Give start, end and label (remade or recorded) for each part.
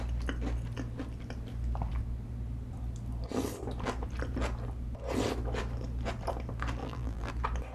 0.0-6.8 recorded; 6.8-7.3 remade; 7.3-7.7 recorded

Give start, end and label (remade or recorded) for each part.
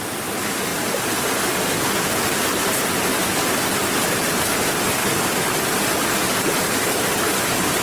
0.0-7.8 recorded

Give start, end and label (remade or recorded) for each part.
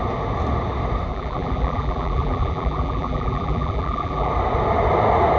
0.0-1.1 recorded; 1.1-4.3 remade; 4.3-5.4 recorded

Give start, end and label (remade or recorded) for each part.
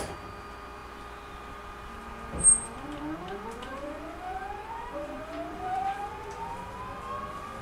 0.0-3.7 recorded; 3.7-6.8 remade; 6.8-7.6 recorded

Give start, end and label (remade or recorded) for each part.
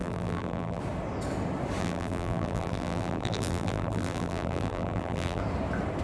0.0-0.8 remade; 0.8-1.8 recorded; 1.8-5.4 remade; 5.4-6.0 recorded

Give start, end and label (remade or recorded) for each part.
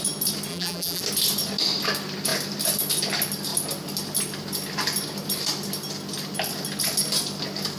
0.0-0.5 recorded; 0.5-1.0 remade; 1.0-7.8 recorded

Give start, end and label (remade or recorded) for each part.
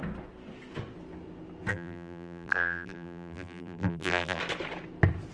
0.0-1.7 recorded; 1.7-4.4 remade; 4.4-5.3 recorded